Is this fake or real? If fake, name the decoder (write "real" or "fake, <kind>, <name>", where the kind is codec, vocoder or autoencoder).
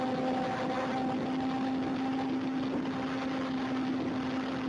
real